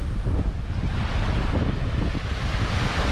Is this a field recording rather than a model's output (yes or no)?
yes